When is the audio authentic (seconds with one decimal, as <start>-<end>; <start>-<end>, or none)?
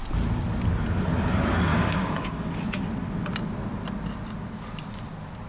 0.0-1.7; 2.5-5.5